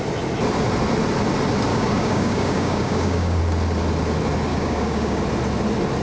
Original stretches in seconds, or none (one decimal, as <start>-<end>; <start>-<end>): 0.0-1.7; 3.4-4.5; 5.2-6.0